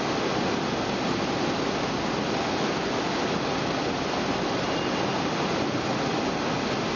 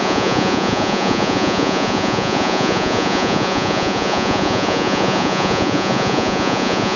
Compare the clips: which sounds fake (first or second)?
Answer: second